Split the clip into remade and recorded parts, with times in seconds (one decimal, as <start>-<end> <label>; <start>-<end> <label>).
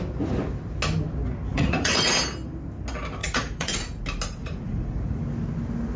0.0-1.5 recorded; 1.5-2.1 remade; 2.1-3.2 recorded; 3.2-4.0 remade; 4.0-4.4 recorded; 4.4-5.2 remade; 5.2-6.0 recorded